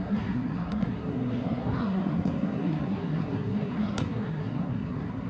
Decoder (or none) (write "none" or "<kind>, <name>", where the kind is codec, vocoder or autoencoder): codec, SNAC